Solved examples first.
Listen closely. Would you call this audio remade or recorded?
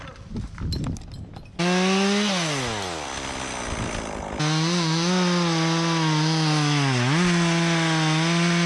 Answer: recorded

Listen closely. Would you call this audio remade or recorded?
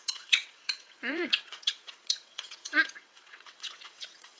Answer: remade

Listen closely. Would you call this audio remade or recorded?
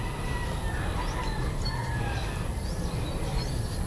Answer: recorded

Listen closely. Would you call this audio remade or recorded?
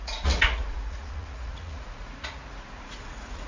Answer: remade